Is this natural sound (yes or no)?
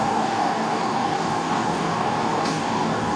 no